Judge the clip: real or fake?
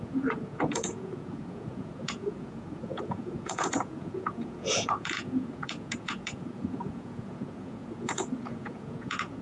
fake